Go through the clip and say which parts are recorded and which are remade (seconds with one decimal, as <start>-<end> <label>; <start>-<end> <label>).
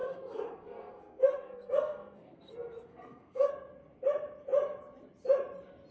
0.0-3.5 remade; 3.5-5.9 recorded